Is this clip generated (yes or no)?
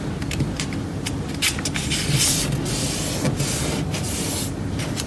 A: no